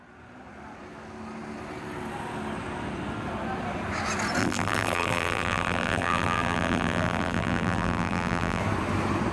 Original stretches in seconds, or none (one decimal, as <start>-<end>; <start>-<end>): 0.0-4.4; 8.6-9.3